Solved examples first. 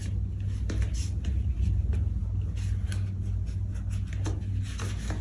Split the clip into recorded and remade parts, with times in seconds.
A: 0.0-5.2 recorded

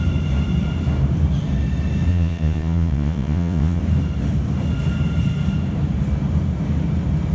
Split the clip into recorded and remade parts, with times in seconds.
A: 0.0-2.1 recorded; 2.1-3.8 remade; 3.8-7.3 recorded

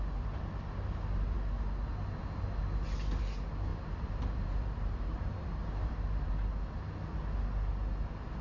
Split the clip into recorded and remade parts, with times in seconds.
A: 0.0-3.7 recorded; 3.7-6.3 remade; 6.3-8.4 recorded

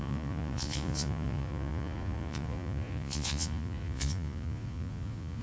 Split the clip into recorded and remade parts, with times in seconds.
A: 0.0-5.4 remade

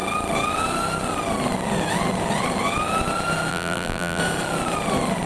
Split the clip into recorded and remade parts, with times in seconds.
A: 0.0-3.5 recorded; 3.5-4.2 remade; 4.2-5.3 recorded